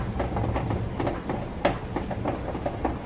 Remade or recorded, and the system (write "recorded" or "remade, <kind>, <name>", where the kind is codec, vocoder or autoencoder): recorded